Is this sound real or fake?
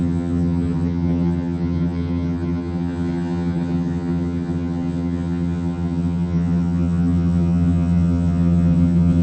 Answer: fake